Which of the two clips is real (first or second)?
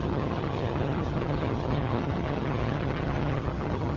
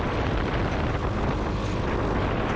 second